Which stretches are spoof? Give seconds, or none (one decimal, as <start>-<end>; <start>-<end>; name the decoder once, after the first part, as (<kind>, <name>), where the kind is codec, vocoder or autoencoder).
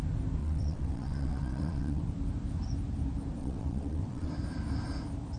0.4-2.0 (vocoder, WaveNeXt); 3.4-4.3